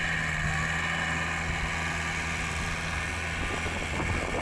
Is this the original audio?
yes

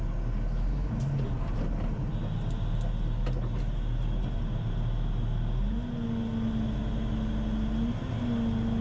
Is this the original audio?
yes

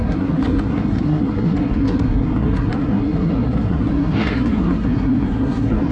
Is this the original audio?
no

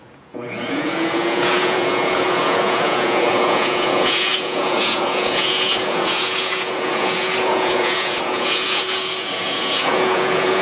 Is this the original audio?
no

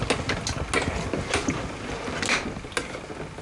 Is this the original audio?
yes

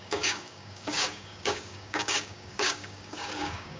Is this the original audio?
no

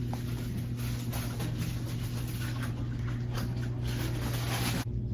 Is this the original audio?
yes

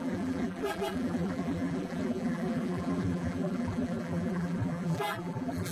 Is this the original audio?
no